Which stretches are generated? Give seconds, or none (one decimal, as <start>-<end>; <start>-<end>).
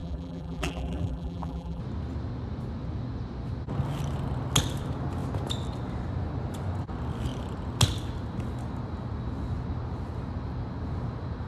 0.0-1.8